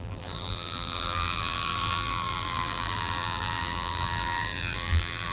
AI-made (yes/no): yes